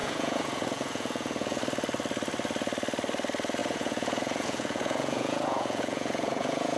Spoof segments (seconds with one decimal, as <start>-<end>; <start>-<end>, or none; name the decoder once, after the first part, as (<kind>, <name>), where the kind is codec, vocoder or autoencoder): 0.0-1.6 (vocoder, Vocos); 3.6-6.8